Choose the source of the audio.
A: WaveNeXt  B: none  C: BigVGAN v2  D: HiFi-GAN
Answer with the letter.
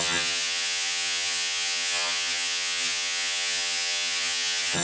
D